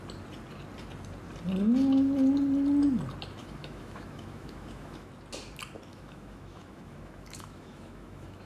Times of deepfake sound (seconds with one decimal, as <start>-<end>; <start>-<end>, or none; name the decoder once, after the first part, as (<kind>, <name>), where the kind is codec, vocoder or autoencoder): 3.4-5.1 (autoencoder, DAC-VAE); 5.9-8.5

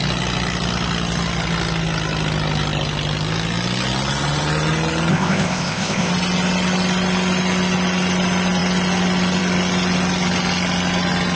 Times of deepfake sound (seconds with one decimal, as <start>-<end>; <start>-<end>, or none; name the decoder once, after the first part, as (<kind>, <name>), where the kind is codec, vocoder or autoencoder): 5.1-6.1 (codec, ZipCodec)

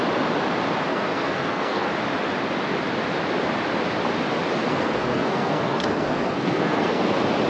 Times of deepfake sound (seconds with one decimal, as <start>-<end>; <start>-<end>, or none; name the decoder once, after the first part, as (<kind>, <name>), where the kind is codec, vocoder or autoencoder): 0.9-1.9 (codec, SNAC); 4.7-7.0